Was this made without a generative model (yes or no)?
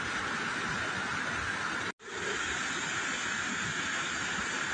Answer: yes